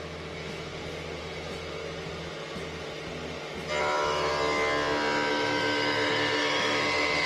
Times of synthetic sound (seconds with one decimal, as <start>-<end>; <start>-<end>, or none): 0.0-0.7; 1.2-1.8; 3.8-4.3; 5.3-7.3